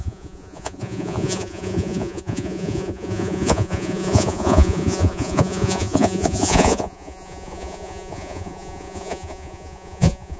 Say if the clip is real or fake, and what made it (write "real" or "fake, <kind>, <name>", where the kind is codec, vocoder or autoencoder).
fake, vocoder, Vocos